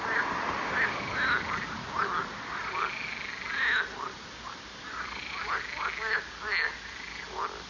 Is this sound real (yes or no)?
yes